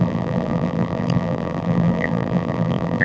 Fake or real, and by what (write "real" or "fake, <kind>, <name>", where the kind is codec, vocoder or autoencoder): fake, vocoder, BigVGAN v2